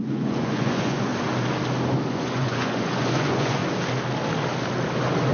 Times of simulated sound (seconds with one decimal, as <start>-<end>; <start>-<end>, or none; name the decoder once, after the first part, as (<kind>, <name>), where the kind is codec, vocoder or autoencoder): 0.0-1.1 (vocoder, Vocos); 2.1-3.6